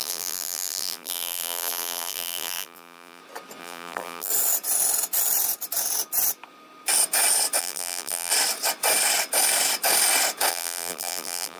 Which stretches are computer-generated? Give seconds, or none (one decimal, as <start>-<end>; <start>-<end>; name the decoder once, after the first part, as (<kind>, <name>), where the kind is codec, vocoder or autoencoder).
0.0-3.2 (vocoder, BigVGAN v2); 3.6-4.3; 7.6-8.3; 10.5-11.6

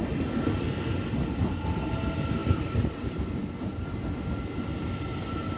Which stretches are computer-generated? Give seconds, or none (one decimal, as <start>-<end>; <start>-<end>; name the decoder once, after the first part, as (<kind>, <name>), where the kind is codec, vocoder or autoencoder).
0.0-0.7 (vocoder, BigVGAN v2); 2.4-4.4

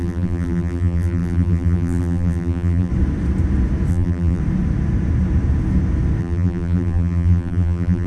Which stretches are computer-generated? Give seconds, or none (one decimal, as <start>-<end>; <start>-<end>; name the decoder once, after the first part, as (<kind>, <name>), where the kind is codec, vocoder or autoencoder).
0.0-2.9 (vocoder, BigVGAN v2); 3.9-4.4; 6.2-8.1

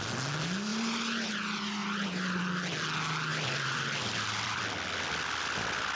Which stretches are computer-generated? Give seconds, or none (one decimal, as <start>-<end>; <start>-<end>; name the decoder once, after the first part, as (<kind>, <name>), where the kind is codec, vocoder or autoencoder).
0.7-1.3 (vocoder, BigVGAN v2); 1.8-2.4; 3.3-4.6

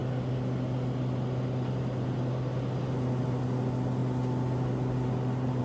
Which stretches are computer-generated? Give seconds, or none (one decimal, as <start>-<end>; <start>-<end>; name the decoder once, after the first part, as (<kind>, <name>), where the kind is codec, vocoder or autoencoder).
none

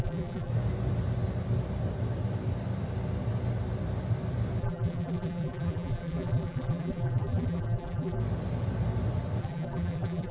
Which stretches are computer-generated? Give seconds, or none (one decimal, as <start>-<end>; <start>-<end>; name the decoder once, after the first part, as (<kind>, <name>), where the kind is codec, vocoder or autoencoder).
0.0-0.5 (vocoder, BigVGAN v2); 4.6-8.2; 9.4-10.3

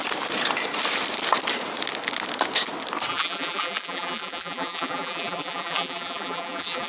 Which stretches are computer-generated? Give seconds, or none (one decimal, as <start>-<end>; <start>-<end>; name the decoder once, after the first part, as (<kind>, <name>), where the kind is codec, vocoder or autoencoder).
3.1-6.9 (vocoder, BigVGAN v2)